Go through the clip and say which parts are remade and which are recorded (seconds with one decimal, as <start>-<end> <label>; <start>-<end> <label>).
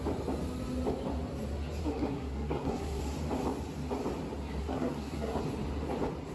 0.0-1.8 recorded; 1.8-3.0 remade; 3.0-4.6 recorded; 4.6-5.4 remade; 5.4-6.3 recorded